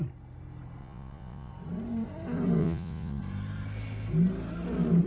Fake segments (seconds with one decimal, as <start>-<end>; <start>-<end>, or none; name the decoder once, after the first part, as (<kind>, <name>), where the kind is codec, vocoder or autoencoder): 0.8-1.5 (vocoder, Vocos); 2.6-3.2